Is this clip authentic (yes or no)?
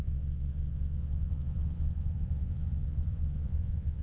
no